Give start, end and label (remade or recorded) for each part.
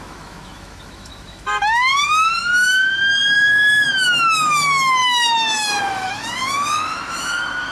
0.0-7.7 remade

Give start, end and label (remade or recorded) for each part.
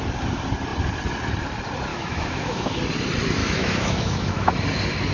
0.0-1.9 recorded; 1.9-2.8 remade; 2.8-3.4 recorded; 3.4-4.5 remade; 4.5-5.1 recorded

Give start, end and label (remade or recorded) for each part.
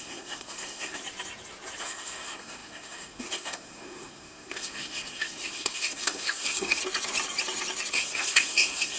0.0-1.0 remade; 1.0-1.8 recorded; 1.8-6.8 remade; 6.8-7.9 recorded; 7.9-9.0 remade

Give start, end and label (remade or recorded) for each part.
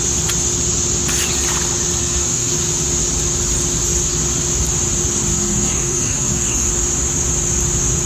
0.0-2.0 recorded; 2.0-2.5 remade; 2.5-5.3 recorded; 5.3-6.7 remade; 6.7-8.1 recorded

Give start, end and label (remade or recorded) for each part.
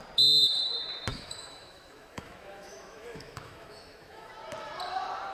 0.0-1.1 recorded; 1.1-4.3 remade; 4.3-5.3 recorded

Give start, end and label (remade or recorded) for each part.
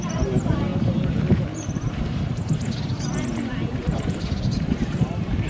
0.0-5.5 remade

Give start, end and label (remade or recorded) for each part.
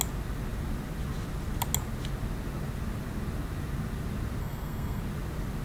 0.0-4.4 recorded; 4.4-5.0 remade; 5.0-5.6 recorded